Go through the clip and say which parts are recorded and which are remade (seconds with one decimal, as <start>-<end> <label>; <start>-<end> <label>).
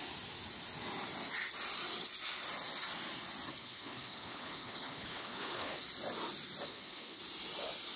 0.0-3.6 recorded; 3.6-5.8 remade; 5.8-6.7 recorded; 6.7-7.2 remade; 7.2-8.0 recorded